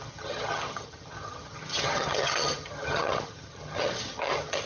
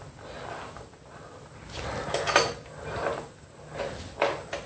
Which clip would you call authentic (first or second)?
second